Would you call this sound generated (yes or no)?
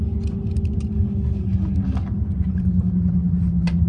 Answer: no